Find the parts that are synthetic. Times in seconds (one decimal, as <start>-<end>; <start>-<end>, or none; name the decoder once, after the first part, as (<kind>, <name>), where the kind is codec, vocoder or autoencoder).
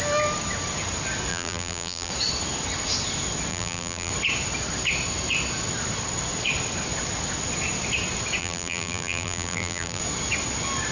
1.3-2.1 (vocoder, BigVGAN v2); 3.5-4.1; 8.4-10.0